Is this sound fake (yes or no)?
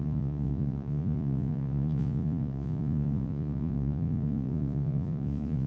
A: yes